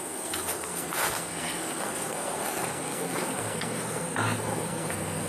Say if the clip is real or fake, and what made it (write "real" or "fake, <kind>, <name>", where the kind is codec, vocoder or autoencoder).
fake, codec, SNAC